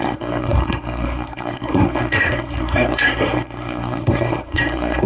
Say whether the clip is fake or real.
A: fake